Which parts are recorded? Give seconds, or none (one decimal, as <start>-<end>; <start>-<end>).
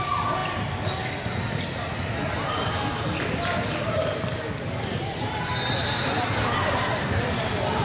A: 0.0-7.8